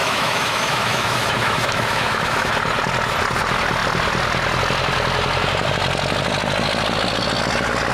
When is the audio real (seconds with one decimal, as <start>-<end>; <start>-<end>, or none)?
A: 2.5-7.9